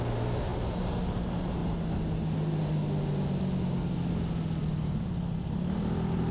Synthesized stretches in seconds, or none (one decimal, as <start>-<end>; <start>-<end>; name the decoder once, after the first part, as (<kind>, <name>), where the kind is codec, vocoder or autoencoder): 0.0-0.5 (vocoder, BigVGAN v2); 1.2-1.6; 5.4-6.3

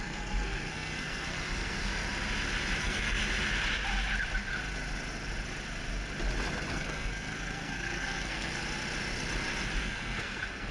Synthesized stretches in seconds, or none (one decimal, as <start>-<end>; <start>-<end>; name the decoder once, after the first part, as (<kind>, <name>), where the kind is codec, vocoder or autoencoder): 0.0-1.9 (codec, SNAC); 2.8-3.2; 6.7-8.6; 9.8-10.7